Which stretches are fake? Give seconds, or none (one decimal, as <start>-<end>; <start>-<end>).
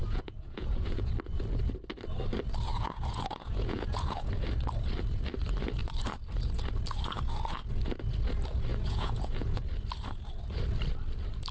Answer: 0.0-1.1; 2.7-4.3; 8.7-9.6